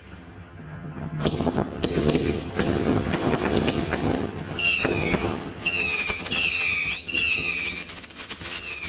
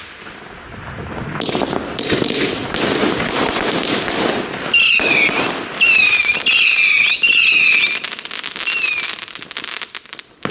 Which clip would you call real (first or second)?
second